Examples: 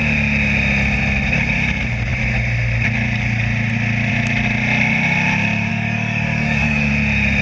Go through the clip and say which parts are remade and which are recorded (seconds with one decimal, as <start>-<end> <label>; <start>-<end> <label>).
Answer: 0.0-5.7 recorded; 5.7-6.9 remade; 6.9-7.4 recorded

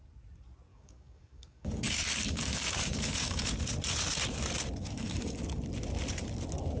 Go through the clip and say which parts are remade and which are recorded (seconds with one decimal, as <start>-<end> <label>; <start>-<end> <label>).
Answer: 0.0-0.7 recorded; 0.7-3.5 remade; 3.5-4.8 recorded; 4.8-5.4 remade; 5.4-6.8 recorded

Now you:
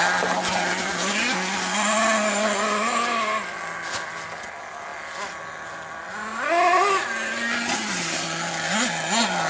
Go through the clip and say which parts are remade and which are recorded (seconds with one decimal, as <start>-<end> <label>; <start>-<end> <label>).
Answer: 0.0-9.5 recorded